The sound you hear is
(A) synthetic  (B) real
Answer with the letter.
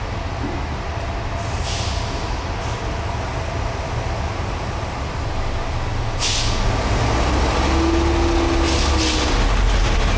B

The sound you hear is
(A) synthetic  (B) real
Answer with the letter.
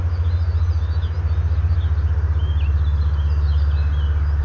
B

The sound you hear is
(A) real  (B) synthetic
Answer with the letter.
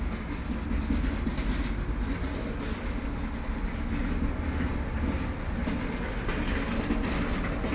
A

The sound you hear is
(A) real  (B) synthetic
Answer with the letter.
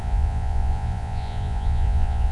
B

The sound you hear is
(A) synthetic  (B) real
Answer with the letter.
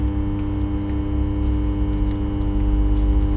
B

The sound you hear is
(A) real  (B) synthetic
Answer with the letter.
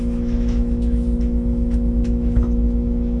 B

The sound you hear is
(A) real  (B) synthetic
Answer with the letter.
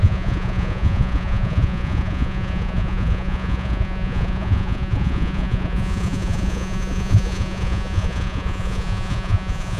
B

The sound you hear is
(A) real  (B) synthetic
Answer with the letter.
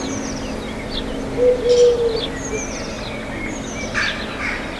A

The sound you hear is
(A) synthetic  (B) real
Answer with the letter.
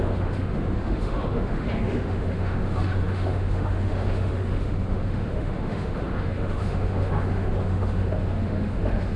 A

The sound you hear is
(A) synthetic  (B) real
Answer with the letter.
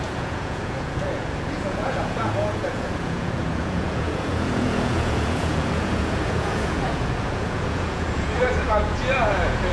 A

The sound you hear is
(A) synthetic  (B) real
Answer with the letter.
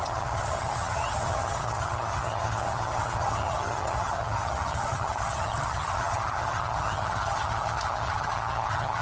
A